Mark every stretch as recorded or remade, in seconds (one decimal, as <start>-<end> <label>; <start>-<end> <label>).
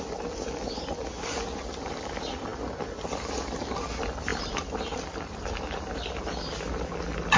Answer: 0.0-4.3 recorded; 4.3-6.2 remade; 6.2-7.4 recorded